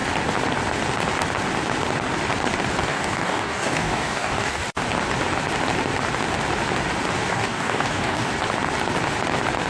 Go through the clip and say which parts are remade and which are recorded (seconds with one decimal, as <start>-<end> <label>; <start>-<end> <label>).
0.0-2.9 recorded; 2.9-4.6 remade; 4.6-7.3 recorded; 7.3-8.3 remade; 8.3-9.7 recorded

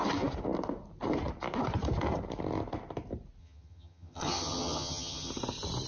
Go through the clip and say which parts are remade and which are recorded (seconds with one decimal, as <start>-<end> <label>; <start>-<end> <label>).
0.0-3.4 recorded; 3.4-5.3 remade; 5.3-5.9 recorded

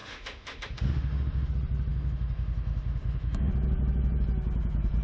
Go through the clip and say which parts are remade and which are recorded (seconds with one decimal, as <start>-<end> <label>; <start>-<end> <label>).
0.0-1.5 remade; 1.5-1.9 recorded; 1.9-3.5 remade; 3.5-5.0 recorded

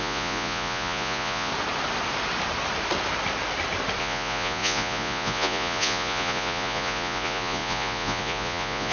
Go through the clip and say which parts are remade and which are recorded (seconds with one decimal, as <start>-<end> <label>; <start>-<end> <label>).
0.0-1.5 remade; 1.5-4.0 recorded; 4.0-8.9 remade

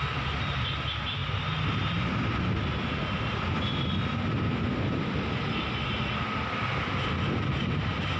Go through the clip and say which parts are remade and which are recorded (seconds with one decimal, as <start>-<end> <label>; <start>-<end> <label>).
0.0-8.2 recorded

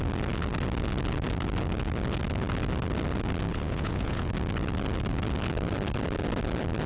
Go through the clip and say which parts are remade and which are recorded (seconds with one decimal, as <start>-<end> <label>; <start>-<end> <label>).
0.0-3.5 recorded; 3.5-4.3 remade; 4.3-6.9 recorded